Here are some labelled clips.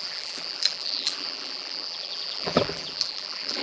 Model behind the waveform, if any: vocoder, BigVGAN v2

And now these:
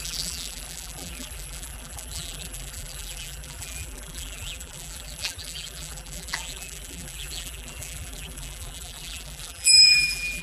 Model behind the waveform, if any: vocoder, BigVGAN v2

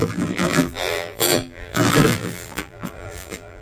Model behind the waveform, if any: vocoder, BigVGAN v2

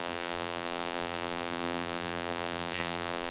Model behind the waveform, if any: vocoder, BigVGAN v2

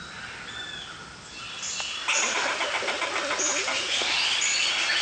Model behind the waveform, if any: none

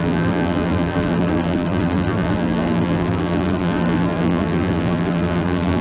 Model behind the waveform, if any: vocoder, BigVGAN v2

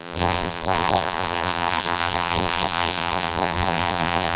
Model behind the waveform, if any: vocoder, BigVGAN v2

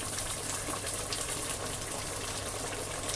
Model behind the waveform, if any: vocoder, BigVGAN v2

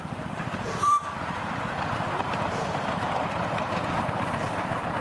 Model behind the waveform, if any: vocoder, BigVGAN v2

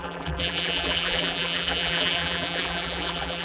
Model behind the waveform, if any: vocoder, BigVGAN v2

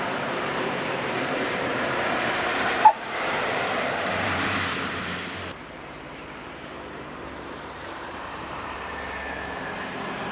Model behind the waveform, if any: vocoder, BigVGAN v2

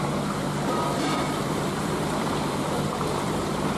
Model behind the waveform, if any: vocoder, BigVGAN v2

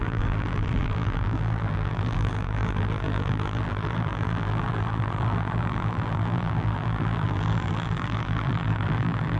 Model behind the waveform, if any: vocoder, BigVGAN v2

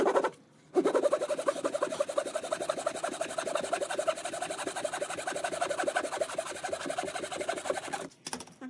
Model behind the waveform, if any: none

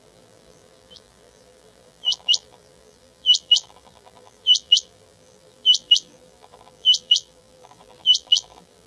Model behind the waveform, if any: vocoder, BigVGAN v2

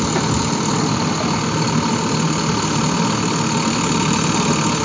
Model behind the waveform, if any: none